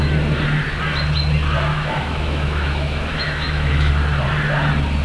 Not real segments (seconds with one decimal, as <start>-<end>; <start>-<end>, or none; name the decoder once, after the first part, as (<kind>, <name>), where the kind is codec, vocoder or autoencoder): 1.7-3.9 (autoencoder, DAC-VAE)